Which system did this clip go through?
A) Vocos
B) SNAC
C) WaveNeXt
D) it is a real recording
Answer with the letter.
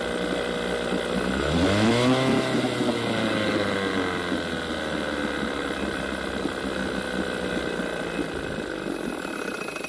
D